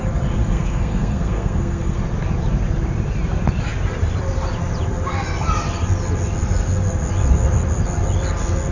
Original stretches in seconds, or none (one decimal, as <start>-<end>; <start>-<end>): 0.0-0.4; 2.0-8.7